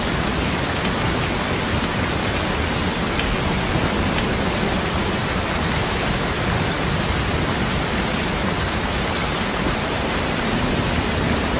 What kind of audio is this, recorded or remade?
recorded